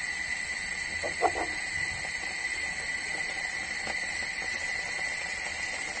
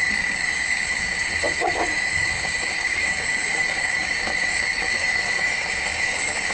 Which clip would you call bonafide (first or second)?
first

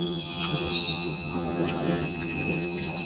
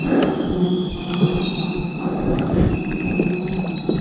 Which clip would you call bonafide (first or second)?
second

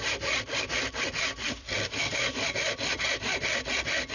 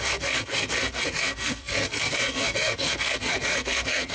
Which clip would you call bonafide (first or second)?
first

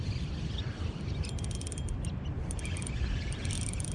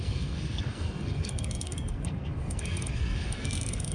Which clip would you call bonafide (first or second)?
first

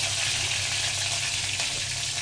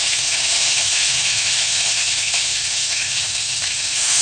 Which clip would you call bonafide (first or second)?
first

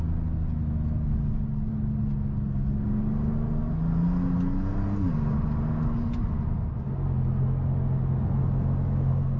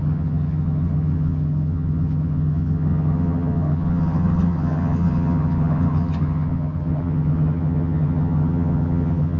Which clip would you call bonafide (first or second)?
first